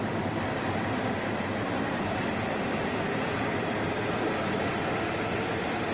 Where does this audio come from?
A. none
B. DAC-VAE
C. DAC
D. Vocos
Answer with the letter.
A